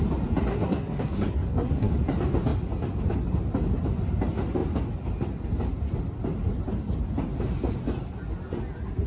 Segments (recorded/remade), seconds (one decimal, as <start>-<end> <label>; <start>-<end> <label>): 0.0-0.5 recorded; 0.5-1.9 remade; 1.9-9.1 recorded